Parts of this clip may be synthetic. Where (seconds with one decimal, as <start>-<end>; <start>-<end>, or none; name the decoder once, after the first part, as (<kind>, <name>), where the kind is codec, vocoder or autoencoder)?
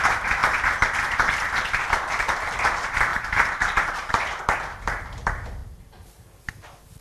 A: 3.1-4.4 (vocoder, BigVGAN v2)